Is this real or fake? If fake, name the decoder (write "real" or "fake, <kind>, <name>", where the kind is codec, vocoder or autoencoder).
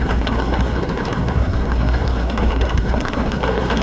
fake, codec, SNAC